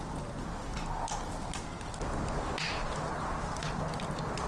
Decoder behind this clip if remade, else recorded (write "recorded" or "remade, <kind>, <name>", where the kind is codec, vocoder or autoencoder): recorded